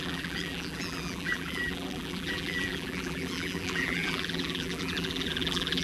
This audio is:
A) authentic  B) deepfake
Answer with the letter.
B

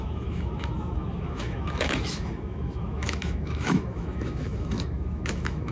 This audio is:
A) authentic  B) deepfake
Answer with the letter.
B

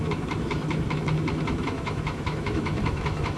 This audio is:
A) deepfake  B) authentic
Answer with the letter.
A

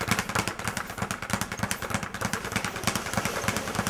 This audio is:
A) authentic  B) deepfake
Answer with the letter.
A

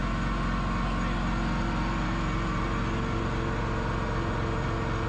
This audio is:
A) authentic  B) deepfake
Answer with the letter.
A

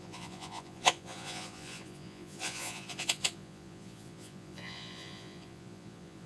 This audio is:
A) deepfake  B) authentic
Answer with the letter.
A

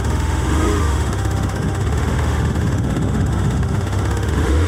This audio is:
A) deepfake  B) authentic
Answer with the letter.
A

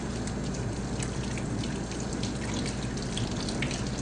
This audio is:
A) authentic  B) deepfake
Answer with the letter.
A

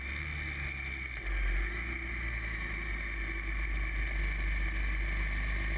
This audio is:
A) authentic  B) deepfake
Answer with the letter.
A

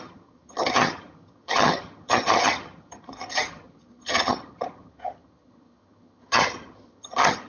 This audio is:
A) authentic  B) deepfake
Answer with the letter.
B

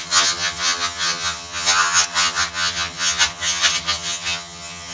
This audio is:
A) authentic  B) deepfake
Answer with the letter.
B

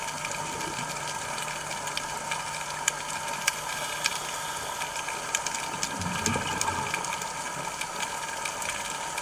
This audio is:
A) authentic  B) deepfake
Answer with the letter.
A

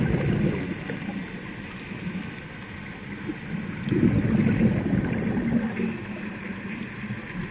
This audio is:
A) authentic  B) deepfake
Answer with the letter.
A